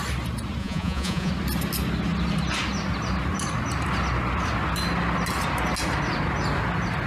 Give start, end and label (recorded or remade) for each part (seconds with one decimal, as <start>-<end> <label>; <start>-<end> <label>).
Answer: 0.0-0.6 recorded; 0.6-1.3 remade; 1.3-7.1 recorded